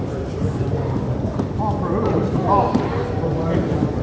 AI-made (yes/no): no